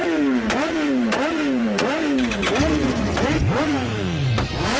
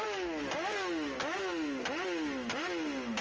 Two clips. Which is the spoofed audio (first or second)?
first